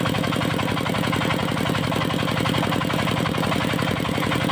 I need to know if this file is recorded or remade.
recorded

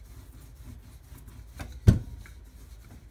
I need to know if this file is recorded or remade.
recorded